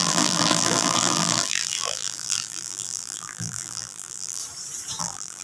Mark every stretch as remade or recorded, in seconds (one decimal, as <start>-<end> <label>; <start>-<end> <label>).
0.0-4.4 remade; 4.4-5.0 recorded; 5.0-5.4 remade